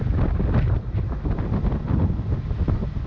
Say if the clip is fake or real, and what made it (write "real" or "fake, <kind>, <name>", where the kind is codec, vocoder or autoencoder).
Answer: real